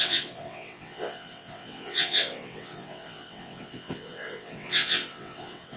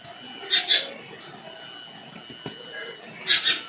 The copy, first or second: first